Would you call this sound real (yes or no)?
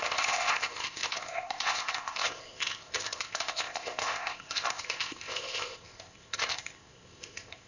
no